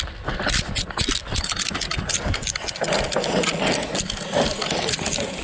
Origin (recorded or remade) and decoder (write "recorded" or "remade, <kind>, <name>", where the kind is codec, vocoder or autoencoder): recorded